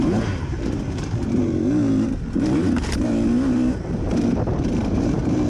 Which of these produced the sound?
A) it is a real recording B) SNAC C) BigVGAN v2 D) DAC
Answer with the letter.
C